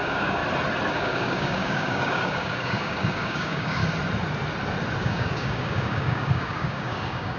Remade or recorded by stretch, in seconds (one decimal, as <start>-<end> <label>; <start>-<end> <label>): 0.0-0.4 remade; 0.4-0.9 recorded; 0.9-3.8 remade; 3.8-5.0 recorded; 5.0-7.4 remade